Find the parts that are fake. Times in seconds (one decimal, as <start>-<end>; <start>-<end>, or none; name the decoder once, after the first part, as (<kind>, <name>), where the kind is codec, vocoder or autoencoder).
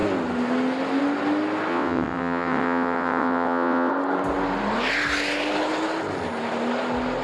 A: 1.7-3.9 (vocoder, WaveNeXt)